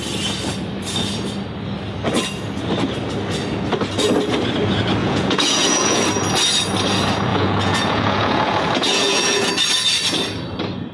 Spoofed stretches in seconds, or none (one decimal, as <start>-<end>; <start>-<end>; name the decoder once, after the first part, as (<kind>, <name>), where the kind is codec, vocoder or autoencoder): 5.0-6.0 (vocoder, Vocos); 7.3-9.5